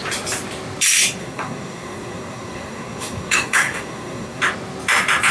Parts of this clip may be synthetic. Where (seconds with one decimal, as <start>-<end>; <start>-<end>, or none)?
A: 1.2-4.4